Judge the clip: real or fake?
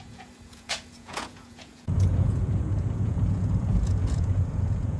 fake